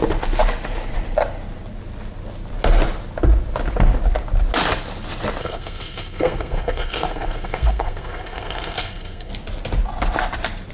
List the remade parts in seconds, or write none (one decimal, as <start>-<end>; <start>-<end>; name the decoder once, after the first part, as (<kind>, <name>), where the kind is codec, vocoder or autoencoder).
5.4-9.3 (codec, SNAC)